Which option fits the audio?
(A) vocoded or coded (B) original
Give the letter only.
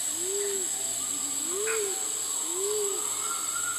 B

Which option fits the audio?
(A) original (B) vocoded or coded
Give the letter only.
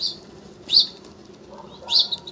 A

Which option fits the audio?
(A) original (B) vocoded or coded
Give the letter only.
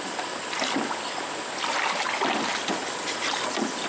A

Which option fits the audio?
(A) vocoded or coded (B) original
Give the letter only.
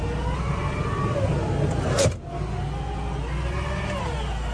B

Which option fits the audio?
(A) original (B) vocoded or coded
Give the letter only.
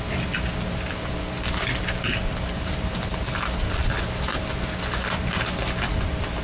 A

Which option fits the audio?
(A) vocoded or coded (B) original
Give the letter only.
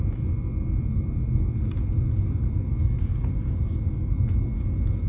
B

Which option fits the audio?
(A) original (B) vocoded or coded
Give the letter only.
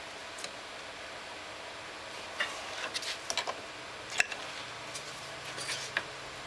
A